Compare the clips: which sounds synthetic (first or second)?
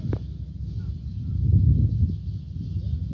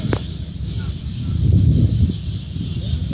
second